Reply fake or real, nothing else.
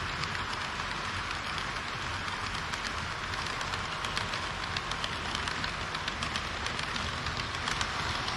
real